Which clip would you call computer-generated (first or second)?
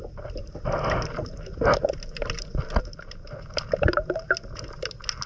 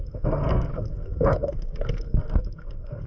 second